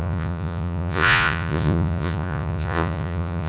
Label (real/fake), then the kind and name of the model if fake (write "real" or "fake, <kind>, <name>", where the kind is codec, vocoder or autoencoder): fake, vocoder, Vocos